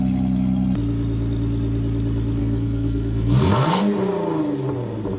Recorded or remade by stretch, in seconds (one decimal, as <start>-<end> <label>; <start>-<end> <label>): 0.0-2.4 recorded; 2.4-3.8 remade; 3.8-5.2 recorded